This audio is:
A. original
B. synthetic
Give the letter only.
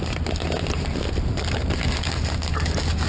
A